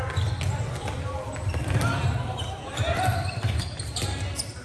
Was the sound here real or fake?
real